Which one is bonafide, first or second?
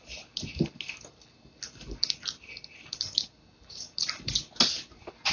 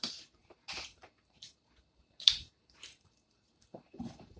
first